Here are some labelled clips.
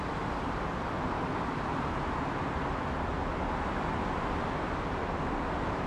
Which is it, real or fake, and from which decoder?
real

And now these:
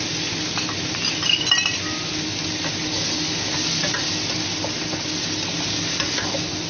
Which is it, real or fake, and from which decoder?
real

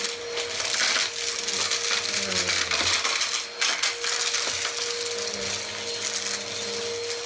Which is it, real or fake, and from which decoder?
real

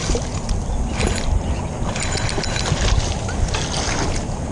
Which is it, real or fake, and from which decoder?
real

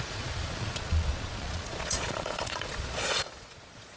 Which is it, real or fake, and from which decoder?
fake, vocoder, Vocos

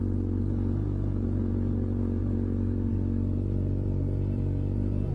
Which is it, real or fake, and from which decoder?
fake, vocoder, Vocos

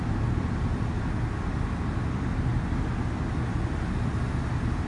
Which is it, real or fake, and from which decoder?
real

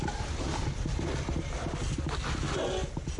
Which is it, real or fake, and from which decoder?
real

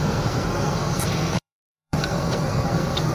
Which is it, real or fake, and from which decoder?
fake, codec, SNAC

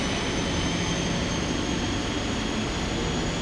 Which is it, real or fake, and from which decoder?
real